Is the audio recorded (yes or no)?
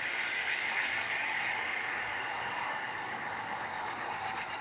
no